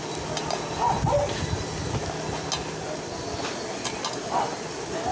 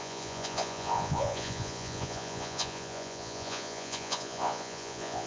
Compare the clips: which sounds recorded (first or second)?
first